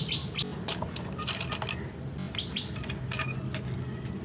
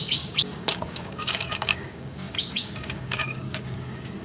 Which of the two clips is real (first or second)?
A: first